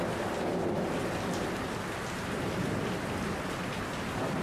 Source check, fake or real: real